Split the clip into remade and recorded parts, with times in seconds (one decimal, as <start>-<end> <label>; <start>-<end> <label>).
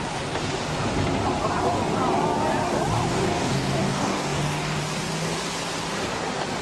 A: 0.0-3.3 recorded; 3.3-4.8 remade; 4.8-6.6 recorded